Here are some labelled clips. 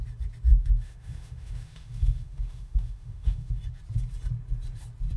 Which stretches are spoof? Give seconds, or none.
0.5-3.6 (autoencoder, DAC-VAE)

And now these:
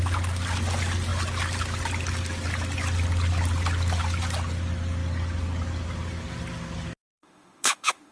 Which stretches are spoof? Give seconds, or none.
7.1-8.1 (autoencoder, DAC-VAE)